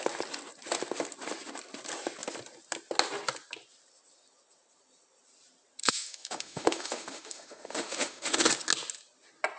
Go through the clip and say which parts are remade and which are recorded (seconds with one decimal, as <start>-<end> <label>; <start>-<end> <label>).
0.0-5.8 recorded; 5.8-8.5 remade; 8.5-9.6 recorded